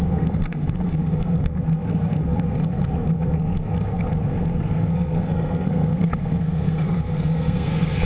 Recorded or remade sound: remade